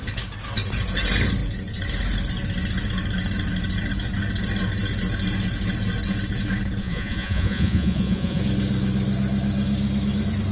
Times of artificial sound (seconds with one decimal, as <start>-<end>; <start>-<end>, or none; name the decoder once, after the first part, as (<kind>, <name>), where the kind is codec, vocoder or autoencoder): 6.8-8.4 (vocoder, Vocos)